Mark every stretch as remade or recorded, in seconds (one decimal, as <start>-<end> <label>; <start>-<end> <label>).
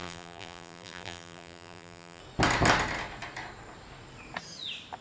0.0-2.2 remade; 2.2-5.0 recorded